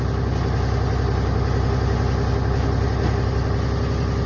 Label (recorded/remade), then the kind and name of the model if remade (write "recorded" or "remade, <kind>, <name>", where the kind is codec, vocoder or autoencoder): recorded